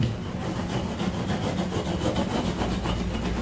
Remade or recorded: recorded